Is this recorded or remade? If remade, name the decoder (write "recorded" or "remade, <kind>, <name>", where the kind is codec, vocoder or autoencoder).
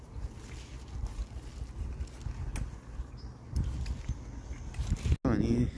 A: recorded